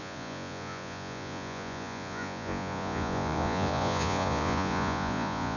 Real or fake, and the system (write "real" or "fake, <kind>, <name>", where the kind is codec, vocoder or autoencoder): fake, vocoder, Vocos